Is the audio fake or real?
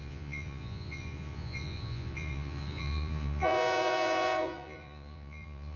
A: fake